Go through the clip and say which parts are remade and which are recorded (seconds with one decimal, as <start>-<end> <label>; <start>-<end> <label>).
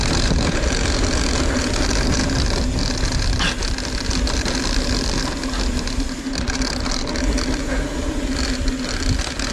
0.0-9.5 recorded